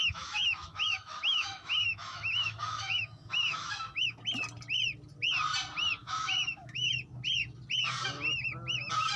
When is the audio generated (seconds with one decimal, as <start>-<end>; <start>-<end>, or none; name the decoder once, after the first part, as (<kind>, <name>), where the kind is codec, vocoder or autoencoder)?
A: 0.0-4.2 (autoencoder, DAC-VAE); 6.0-6.9